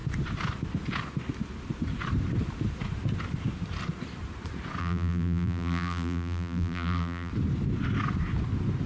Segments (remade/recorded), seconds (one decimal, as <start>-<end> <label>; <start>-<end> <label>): 0.0-4.8 recorded; 4.8-7.3 remade; 7.3-8.9 recorded